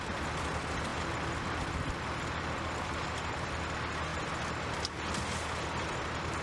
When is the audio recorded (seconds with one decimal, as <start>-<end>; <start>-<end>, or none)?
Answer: 0.0-6.4